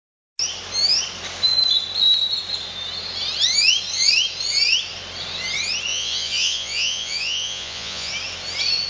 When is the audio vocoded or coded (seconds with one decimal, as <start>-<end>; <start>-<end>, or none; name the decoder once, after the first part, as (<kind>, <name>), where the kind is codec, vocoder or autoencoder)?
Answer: 5.9-8.1 (vocoder, Vocos)